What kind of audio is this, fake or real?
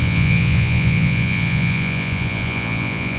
fake